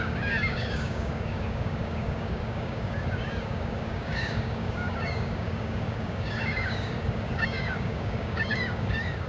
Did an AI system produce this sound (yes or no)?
yes